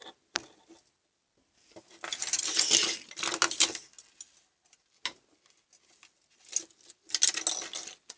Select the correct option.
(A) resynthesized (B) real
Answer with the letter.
B